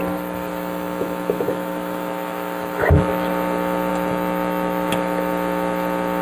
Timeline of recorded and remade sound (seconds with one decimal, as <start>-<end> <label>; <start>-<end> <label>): 0.0-0.5 recorded; 0.5-3.3 remade; 3.3-3.9 recorded; 3.9-4.9 remade; 4.9-6.2 recorded